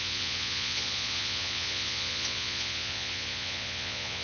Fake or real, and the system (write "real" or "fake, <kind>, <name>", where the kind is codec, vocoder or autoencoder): fake, vocoder, Vocos